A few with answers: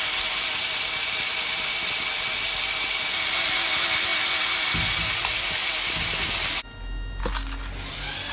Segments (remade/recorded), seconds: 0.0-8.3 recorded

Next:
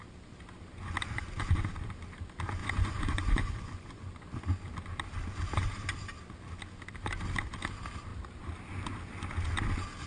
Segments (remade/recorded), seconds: 0.0-2.6 recorded; 2.6-4.1 remade; 4.1-10.1 recorded

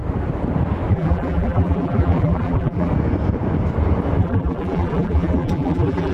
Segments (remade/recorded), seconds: 0.0-0.9 recorded; 0.9-2.9 remade; 2.9-4.2 recorded; 4.2-6.1 remade

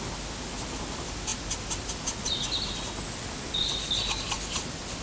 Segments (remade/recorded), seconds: 0.0-5.0 recorded

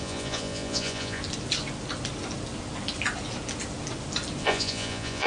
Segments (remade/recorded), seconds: 0.0-1.2 remade; 1.2-4.4 recorded; 4.4-5.3 remade

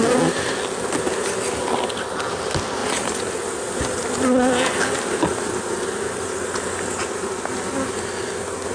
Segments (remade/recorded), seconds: 0.0-8.7 recorded